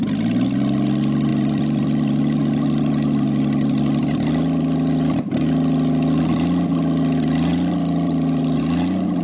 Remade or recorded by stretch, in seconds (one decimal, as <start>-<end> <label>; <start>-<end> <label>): 0.0-1.3 recorded; 1.3-2.4 remade; 2.4-7.5 recorded; 7.5-8.6 remade; 8.6-9.2 recorded